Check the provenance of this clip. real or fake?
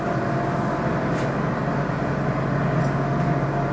real